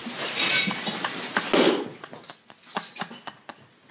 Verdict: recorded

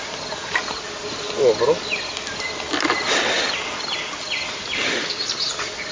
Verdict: recorded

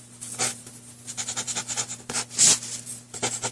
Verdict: recorded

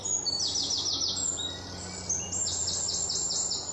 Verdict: recorded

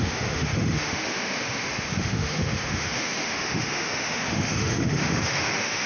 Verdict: remade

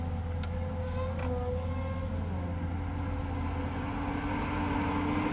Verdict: recorded